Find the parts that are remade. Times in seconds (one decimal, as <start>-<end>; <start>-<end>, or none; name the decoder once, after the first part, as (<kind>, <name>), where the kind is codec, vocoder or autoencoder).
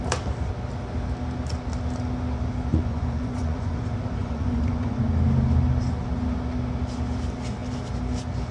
2.7-3.8 (vocoder, Vocos); 4.2-5.0